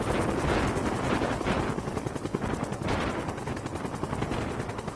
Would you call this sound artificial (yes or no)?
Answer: no